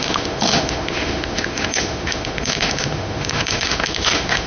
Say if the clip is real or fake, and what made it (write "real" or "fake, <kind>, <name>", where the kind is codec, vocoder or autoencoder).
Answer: fake, autoencoder, DAC-VAE